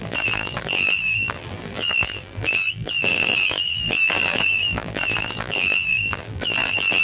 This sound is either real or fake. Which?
fake